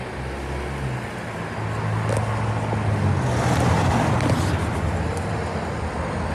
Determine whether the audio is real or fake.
real